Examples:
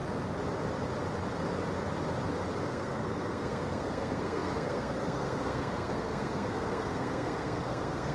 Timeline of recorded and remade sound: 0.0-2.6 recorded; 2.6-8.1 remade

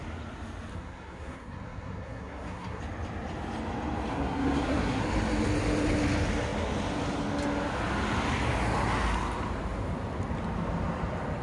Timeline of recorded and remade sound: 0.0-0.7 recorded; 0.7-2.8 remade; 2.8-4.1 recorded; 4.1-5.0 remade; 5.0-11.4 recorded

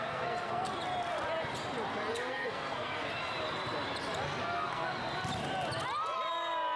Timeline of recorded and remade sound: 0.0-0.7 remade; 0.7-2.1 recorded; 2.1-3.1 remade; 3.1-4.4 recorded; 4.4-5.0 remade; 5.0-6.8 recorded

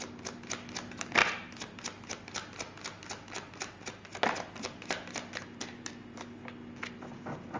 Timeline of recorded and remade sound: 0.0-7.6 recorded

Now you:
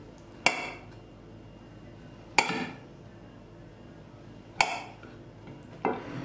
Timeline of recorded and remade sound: 0.0-6.2 recorded

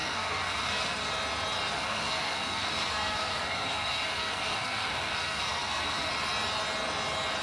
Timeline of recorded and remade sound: 0.0-1.1 remade; 1.1-1.7 recorded; 1.7-6.1 remade; 6.1-7.4 recorded